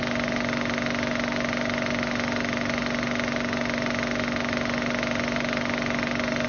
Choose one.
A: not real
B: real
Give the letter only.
B